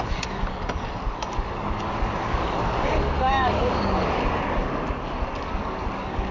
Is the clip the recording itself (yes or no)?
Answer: no